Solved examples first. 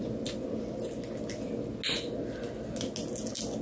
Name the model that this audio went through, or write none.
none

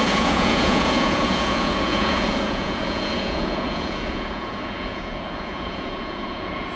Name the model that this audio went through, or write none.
vocoder, Vocos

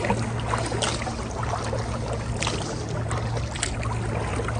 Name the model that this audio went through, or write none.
none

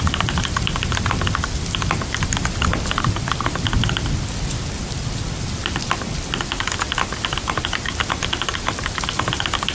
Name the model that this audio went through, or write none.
none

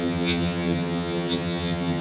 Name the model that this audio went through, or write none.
vocoder, HiFi-GAN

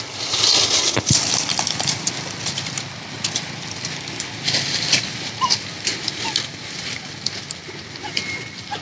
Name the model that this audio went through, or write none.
none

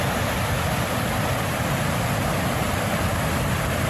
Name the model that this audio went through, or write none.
vocoder, BigVGAN v2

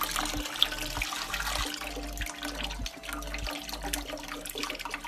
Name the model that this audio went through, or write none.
none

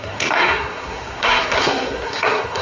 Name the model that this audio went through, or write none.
codec, SNAC